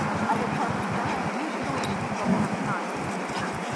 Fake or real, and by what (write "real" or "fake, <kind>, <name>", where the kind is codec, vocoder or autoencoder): real